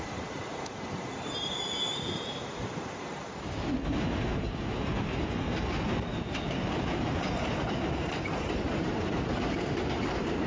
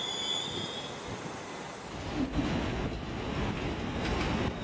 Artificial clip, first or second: first